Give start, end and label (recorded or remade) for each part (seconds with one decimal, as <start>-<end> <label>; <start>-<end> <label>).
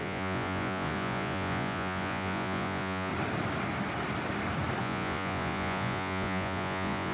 0.0-3.1 remade; 3.1-4.8 recorded; 4.8-7.1 remade